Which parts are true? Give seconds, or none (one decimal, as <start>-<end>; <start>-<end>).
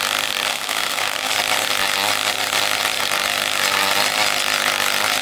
0.0-0.5; 1.3-5.2